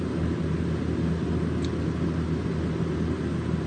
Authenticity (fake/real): real